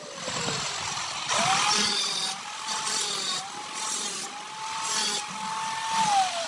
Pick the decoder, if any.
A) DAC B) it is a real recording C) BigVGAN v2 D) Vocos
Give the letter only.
B